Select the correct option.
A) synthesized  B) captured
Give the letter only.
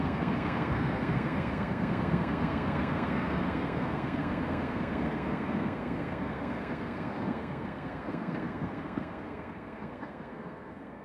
A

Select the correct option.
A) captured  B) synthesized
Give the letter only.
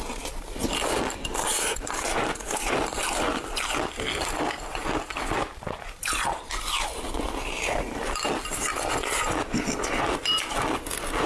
A